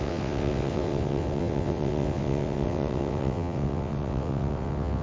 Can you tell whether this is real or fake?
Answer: fake